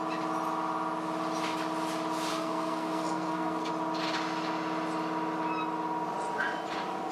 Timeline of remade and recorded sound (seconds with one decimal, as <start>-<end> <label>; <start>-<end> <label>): 0.0-2.3 recorded; 2.3-3.7 remade; 3.7-7.1 recorded